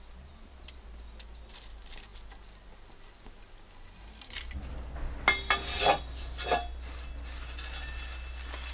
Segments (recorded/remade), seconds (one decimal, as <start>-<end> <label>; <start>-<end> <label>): 0.0-8.7 recorded

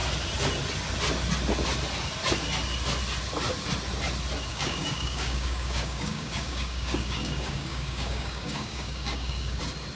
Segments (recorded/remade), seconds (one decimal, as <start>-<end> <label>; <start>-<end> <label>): 0.0-4.5 recorded; 4.5-9.6 remade; 9.6-10.0 recorded